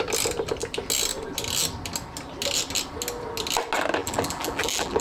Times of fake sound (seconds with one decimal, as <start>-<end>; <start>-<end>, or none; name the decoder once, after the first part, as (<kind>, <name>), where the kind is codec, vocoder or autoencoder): 4.0-5.0 (vocoder, BigVGAN v2)

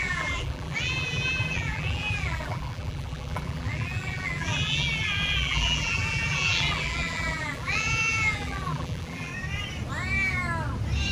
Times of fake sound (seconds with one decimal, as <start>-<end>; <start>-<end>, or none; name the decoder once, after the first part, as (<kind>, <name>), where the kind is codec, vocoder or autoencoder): 0.0-9.3 (vocoder, BigVGAN v2)

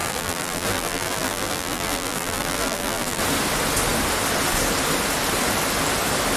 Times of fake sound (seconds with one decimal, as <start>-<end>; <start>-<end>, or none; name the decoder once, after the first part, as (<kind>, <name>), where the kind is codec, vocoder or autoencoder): 0.0-3.2 (vocoder, BigVGAN v2)

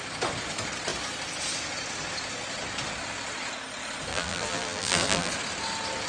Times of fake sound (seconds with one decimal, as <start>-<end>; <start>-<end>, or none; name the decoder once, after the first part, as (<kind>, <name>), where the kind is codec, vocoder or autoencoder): 4.1-5.3 (vocoder, BigVGAN v2)

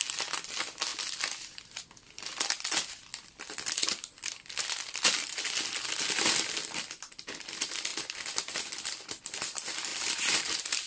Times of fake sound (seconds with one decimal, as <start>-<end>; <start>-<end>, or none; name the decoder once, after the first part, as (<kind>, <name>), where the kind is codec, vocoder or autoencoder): 0.0-7.9 (vocoder, BigVGAN v2); 9.0-10.9